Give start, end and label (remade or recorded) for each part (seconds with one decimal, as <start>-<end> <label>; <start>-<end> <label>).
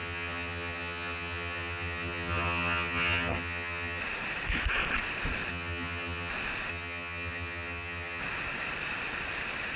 0.0-4.0 remade; 4.0-5.5 recorded; 5.5-6.3 remade; 6.3-6.7 recorded; 6.7-8.2 remade; 8.2-9.8 recorded